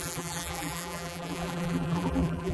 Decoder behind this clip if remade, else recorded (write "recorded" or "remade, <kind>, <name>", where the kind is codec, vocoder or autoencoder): remade, vocoder, BigVGAN v2